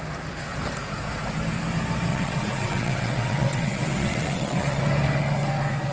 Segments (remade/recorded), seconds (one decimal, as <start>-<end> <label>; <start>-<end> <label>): 0.0-2.1 recorded; 2.1-4.8 remade; 4.8-5.9 recorded